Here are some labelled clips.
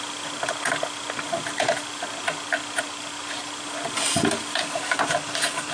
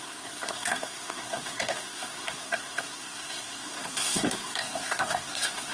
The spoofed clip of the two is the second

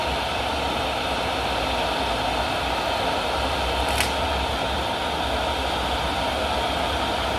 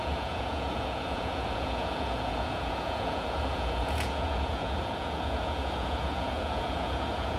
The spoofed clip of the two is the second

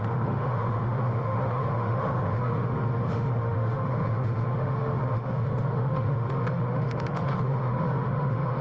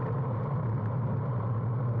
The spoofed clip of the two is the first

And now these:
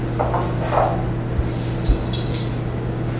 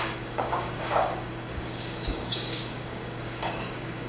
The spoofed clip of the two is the second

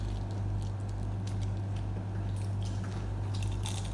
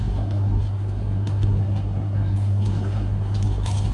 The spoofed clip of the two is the second